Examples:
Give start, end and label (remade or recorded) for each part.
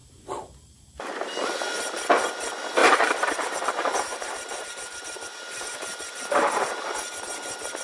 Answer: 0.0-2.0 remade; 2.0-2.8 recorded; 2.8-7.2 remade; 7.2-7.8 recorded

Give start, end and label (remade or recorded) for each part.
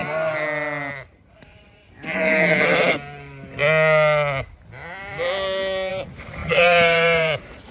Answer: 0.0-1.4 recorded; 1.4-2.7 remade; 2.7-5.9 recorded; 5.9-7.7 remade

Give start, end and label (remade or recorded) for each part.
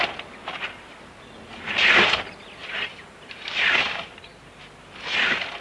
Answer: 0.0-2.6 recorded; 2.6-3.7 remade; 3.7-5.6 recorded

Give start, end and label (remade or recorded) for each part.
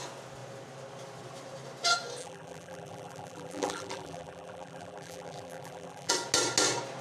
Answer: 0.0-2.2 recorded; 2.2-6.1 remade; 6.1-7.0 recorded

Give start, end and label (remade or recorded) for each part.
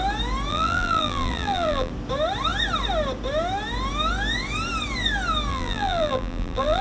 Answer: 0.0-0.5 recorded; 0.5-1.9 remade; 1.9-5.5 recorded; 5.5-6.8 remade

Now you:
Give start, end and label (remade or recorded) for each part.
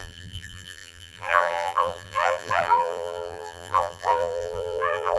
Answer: 0.0-5.2 remade